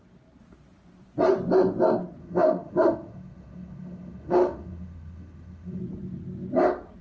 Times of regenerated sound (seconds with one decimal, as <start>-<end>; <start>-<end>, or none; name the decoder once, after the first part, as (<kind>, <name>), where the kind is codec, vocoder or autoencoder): 2.2-5.8 (autoencoder, DAC-VAE)